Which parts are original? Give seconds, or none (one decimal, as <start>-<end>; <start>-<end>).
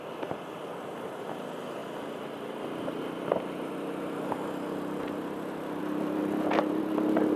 0.0-7.4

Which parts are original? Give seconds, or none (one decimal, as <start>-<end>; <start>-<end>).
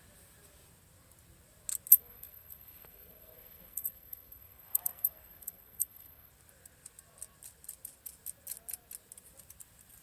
0.0-1.9; 6.3-10.0